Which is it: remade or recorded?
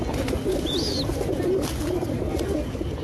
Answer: recorded